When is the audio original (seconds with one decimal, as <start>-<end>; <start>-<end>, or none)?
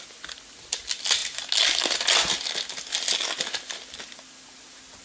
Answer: 0.0-5.0